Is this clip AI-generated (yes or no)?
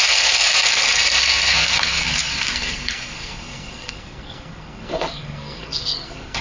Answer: yes